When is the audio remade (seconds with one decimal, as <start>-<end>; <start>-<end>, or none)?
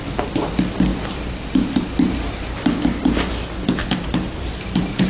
0.9-2.8; 3.8-5.1